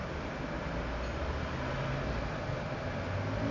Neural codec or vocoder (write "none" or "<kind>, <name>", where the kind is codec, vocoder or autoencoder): none